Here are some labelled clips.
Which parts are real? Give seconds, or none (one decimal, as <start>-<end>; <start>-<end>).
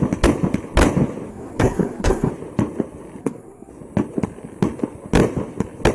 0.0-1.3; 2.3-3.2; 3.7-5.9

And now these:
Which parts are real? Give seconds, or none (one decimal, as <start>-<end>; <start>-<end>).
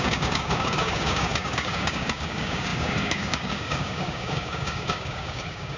none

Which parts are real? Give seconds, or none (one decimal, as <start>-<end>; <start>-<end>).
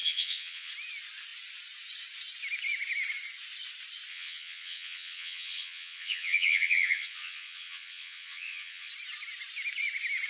0.7-4.1; 8.9-10.3